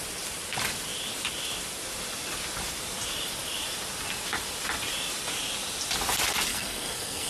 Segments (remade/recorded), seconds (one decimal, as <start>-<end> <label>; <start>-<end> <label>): 0.0-6.5 recorded; 6.5-7.3 remade

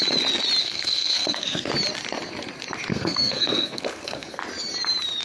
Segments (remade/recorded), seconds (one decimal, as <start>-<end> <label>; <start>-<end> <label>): 0.0-0.6 recorded; 0.6-1.7 remade; 1.7-2.9 recorded; 2.9-4.4 remade; 4.4-5.2 recorded

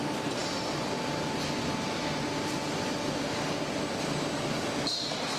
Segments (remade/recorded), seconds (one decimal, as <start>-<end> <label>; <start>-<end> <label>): 0.0-5.4 recorded

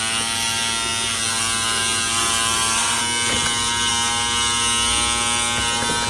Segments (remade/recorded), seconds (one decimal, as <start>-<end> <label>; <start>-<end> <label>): 0.0-6.1 recorded